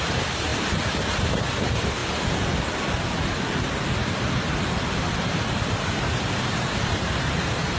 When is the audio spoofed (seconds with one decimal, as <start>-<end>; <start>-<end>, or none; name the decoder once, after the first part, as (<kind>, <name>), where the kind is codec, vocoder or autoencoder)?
0.0-0.5 (vocoder, BigVGAN v2); 1.1-2.0; 5.0-7.8